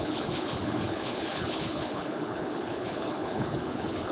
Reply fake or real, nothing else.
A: fake